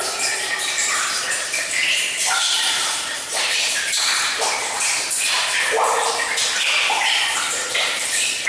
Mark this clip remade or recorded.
remade